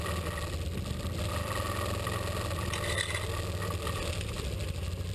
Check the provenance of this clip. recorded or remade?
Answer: recorded